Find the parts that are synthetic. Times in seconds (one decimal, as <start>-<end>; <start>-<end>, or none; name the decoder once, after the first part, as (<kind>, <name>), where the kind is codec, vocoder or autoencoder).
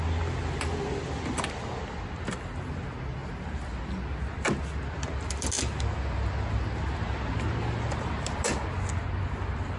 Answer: none